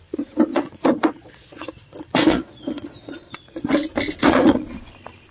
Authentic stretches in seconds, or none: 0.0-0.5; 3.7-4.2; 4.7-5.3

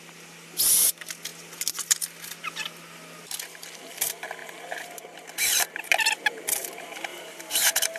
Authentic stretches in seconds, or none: 0.0-7.1

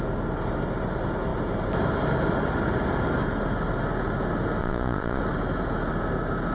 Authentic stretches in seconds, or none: 0.0-4.6; 5.2-6.5